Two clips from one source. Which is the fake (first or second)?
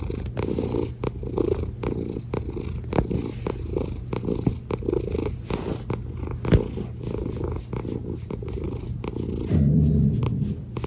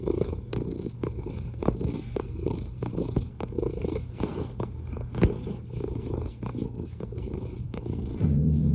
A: second